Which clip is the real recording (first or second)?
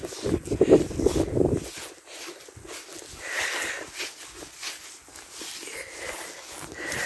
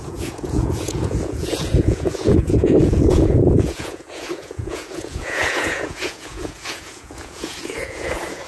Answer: first